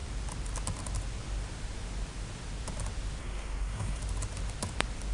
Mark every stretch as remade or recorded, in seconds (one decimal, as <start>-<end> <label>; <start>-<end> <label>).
0.0-3.2 recorded; 3.2-4.0 remade; 4.0-5.1 recorded

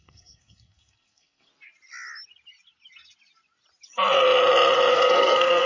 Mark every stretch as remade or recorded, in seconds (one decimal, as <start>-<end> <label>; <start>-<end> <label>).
0.0-1.5 remade; 1.5-4.9 recorded; 4.9-5.7 remade

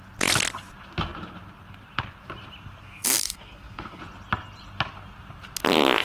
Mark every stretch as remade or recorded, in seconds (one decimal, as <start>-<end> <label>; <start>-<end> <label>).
0.0-2.8 recorded; 2.8-4.0 remade; 4.0-6.0 recorded

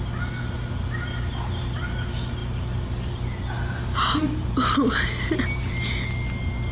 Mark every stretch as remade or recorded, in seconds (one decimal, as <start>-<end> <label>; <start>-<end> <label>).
0.0-6.7 recorded

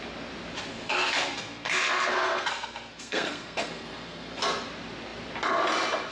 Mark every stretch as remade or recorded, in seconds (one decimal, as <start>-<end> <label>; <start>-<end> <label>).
0.0-0.7 recorded; 0.7-4.4 remade; 4.4-6.1 recorded

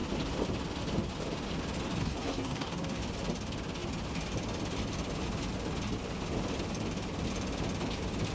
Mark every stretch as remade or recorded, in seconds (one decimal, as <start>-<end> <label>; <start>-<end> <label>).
0.0-2.0 recorded; 2.0-3.0 remade; 3.0-8.3 recorded

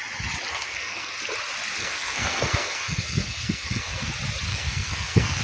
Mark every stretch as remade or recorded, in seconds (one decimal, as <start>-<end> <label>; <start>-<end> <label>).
0.0-0.5 recorded; 0.5-1.1 remade; 1.1-1.8 recorded; 1.8-4.1 remade; 4.1-4.5 recorded; 4.5-5.4 remade

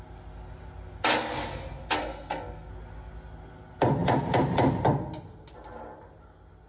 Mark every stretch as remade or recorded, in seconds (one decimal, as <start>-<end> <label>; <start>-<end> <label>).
0.0-2.0 recorded; 2.0-2.7 remade; 2.7-6.7 recorded